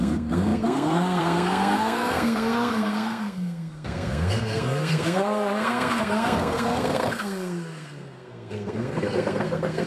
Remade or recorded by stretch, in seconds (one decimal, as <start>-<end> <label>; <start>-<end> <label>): 0.0-9.9 remade